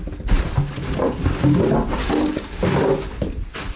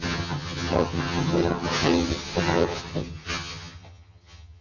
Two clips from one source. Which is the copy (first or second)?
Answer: second